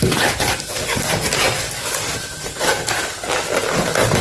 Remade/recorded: recorded